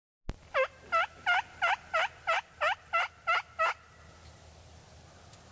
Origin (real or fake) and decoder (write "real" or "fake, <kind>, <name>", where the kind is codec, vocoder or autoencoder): real